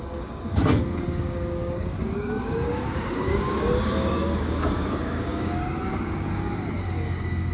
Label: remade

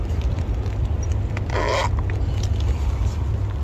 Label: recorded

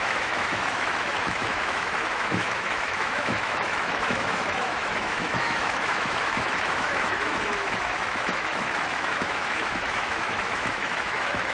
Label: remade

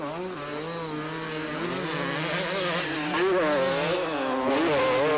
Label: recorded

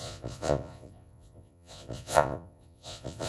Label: remade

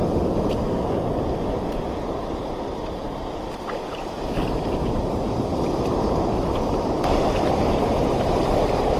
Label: recorded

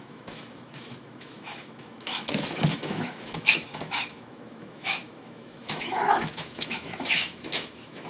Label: remade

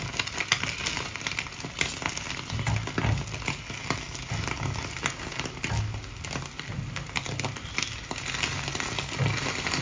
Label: recorded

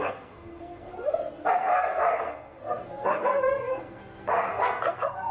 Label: remade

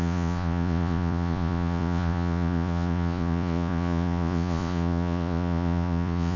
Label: remade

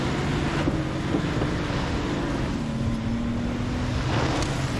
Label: recorded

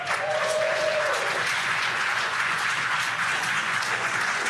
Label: remade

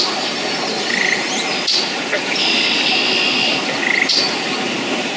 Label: recorded